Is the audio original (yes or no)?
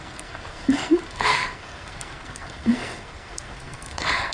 no